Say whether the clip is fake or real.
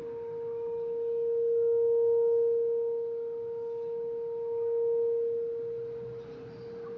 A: real